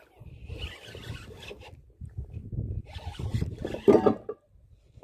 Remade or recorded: recorded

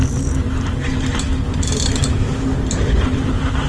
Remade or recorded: recorded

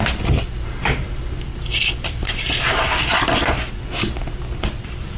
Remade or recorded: recorded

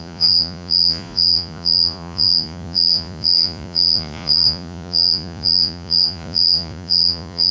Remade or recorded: remade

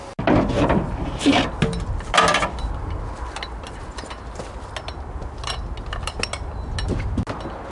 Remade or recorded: recorded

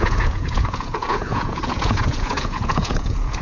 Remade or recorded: remade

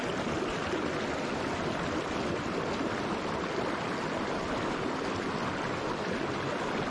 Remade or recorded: recorded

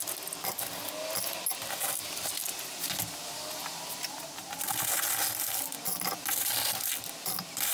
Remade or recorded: recorded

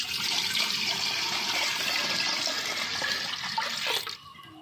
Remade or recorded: recorded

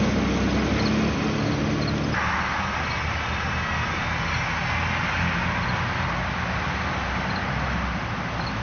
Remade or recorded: recorded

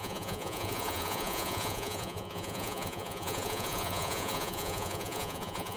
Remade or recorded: remade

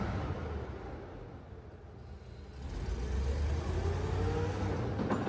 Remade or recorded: recorded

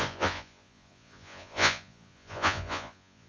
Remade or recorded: remade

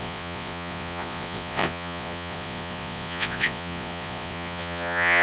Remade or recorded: remade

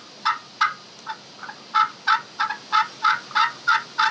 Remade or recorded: recorded